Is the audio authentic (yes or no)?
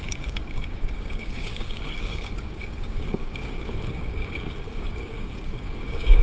no